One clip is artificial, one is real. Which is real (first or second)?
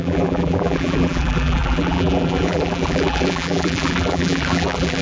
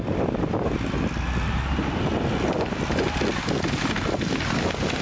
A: second